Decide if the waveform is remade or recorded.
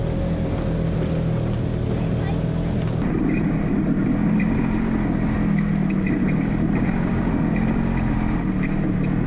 recorded